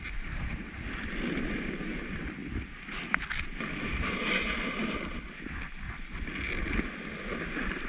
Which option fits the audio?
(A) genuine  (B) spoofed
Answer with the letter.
A